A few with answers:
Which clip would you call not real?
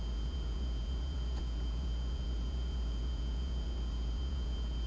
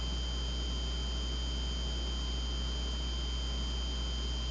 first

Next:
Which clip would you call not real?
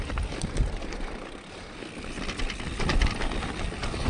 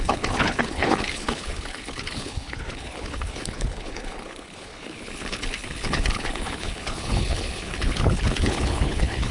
second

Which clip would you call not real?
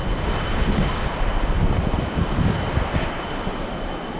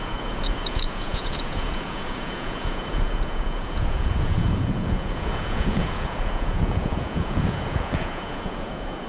second